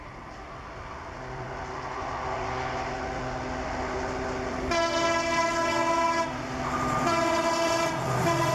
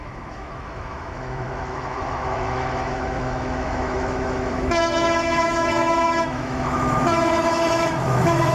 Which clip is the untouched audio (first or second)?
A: first